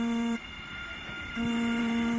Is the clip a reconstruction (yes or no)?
yes